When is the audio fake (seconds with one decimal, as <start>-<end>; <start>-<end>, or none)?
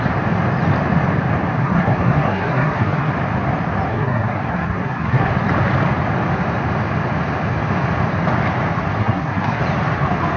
1.6-3.1; 3.9-5.3; 9.0-9.6